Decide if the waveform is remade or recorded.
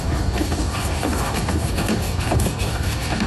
remade